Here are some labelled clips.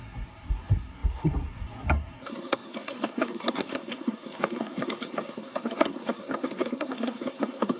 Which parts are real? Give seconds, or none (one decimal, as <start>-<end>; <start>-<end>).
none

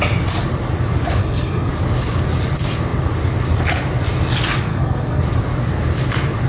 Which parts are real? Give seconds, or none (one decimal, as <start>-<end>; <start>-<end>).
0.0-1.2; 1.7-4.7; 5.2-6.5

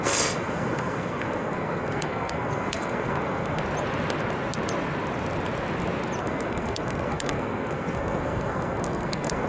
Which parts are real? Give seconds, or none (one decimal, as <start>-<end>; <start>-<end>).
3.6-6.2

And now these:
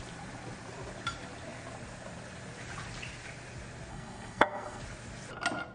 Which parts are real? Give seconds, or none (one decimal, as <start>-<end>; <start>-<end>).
0.0-3.9; 4.8-5.7